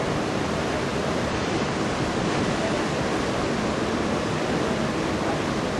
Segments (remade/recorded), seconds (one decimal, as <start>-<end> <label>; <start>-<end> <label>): 0.0-5.8 recorded

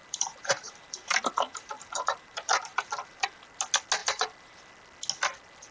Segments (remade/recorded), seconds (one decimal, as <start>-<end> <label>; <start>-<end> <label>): 0.0-3.4 remade; 3.4-4.0 recorded; 4.0-4.7 remade; 4.7-5.7 recorded

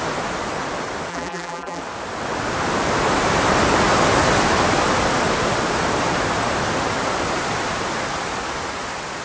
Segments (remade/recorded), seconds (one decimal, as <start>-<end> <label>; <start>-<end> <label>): 0.0-1.1 recorded; 1.1-1.8 remade; 1.8-9.2 recorded

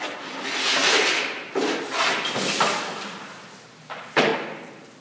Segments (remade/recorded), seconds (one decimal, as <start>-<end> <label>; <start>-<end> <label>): 0.0-5.0 recorded

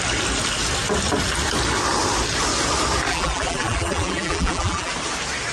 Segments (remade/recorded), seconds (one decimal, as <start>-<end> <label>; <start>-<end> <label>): 0.0-3.1 recorded; 3.1-4.9 remade; 4.9-5.5 recorded